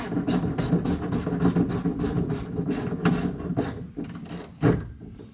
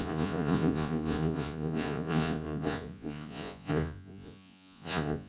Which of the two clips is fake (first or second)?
second